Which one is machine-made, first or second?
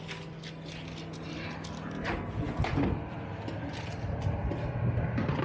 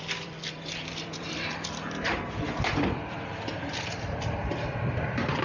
second